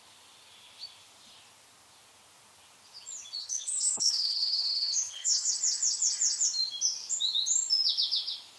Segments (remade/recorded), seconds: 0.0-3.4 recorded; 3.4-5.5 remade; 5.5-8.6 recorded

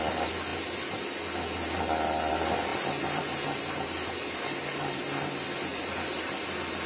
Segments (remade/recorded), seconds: 0.0-6.9 recorded

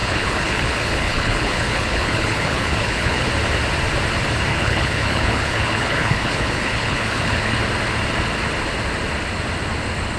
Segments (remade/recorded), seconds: 0.0-3.3 remade; 3.3-4.5 recorded; 4.5-7.6 remade; 7.6-10.2 recorded